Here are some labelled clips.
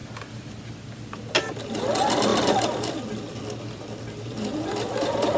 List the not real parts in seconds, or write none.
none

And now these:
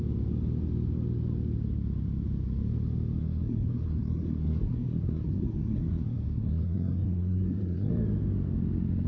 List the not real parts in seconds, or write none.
3.2-7.9

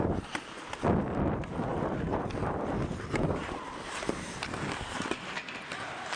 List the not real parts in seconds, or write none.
none

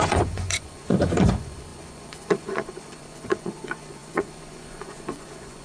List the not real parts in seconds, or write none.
0.0-5.6